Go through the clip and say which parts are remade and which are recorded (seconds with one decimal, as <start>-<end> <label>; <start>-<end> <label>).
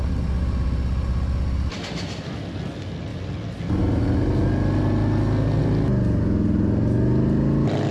0.0-7.9 recorded